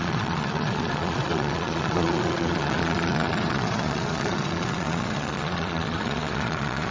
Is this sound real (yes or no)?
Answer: no